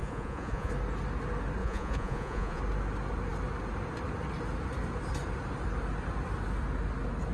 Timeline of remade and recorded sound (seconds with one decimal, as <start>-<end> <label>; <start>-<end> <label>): 0.0-0.7 remade; 0.7-1.6 recorded; 1.6-2.6 remade; 2.6-7.3 recorded